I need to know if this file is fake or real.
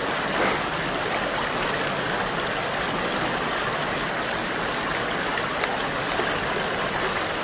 real